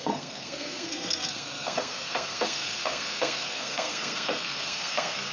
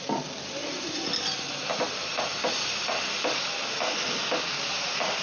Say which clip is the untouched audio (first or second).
second